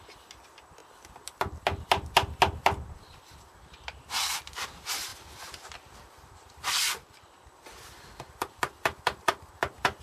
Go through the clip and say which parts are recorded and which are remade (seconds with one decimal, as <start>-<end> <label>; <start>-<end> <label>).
0.0-5.1 recorded; 5.1-9.5 remade; 9.5-10.0 recorded